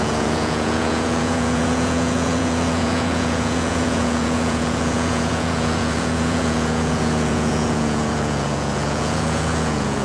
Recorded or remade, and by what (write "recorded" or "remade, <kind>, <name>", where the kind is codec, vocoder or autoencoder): remade, vocoder, Vocos